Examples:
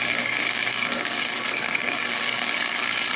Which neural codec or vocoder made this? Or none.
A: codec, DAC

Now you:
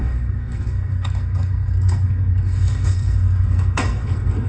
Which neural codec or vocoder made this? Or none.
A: codec, SNAC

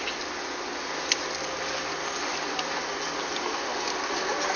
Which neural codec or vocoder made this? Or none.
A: none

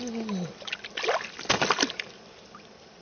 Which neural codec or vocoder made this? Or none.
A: none